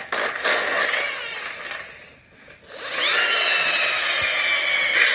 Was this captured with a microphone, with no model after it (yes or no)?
yes